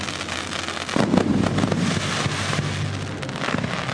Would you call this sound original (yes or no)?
yes